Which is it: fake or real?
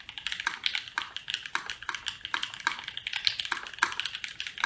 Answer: real